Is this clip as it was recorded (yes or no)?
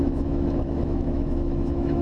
no